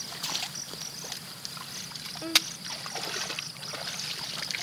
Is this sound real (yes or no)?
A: yes